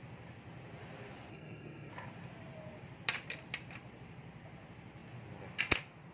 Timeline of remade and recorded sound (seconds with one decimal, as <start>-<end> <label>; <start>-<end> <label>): 0.0-1.3 recorded; 1.3-1.9 remade; 1.9-6.1 recorded